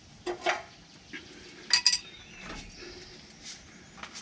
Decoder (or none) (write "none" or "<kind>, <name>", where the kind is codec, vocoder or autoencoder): none